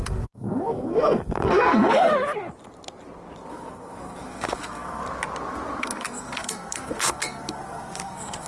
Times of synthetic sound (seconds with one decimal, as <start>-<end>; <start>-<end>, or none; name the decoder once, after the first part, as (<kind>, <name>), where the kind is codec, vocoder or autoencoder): 0.0-2.1 (codec, SNAC); 3.5-5.0; 5.8-8.5